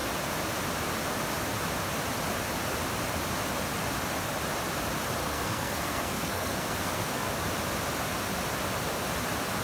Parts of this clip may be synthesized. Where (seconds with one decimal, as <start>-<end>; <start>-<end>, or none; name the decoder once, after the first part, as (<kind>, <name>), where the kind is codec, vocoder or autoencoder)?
5.2-7.3 (codec, SNAC)